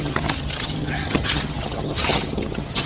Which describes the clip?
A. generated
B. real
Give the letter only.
A